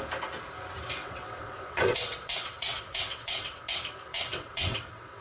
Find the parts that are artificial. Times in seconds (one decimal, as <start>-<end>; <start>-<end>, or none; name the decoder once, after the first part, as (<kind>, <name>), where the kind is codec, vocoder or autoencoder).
1.0-3.6 (vocoder, WaveNeXt); 4.1-5.2